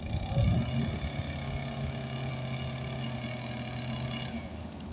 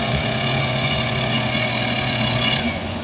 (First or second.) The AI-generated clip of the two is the second